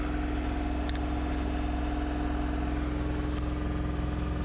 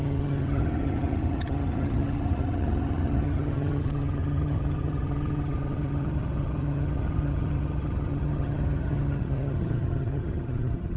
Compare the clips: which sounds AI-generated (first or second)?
second